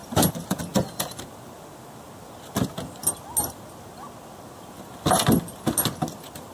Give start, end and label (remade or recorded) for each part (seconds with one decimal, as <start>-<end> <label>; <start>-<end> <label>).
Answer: 0.0-0.6 remade; 0.6-6.5 recorded